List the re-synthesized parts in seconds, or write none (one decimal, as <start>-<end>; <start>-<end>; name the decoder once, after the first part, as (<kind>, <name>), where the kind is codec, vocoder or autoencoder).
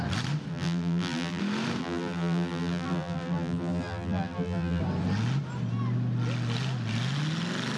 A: 0.5-1.4 (vocoder, BigVGAN v2); 1.8-4.8